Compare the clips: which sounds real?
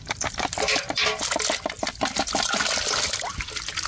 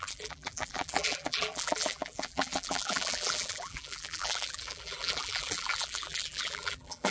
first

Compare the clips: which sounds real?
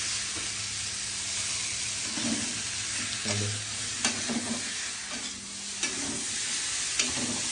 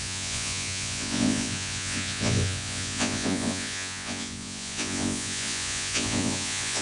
first